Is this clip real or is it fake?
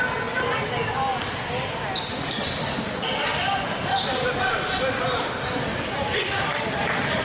real